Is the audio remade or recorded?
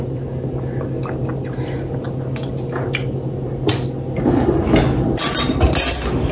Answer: recorded